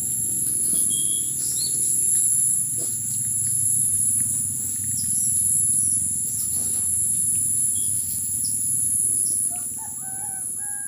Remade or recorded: recorded